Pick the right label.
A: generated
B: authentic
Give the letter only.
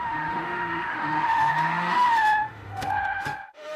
A